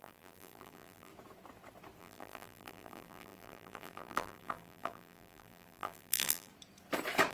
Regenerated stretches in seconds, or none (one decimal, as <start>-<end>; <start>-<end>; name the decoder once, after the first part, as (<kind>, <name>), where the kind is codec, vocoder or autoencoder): 0.0-1.1 (vocoder, BigVGAN v2); 2.0-6.5